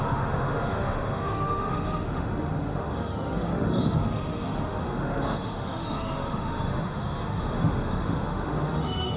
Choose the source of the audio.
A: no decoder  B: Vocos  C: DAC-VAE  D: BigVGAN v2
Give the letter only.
C